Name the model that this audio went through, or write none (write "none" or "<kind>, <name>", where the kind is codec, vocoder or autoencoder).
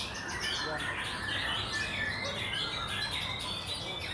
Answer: none